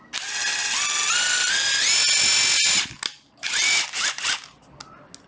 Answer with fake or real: real